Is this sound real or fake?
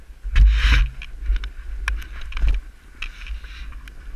real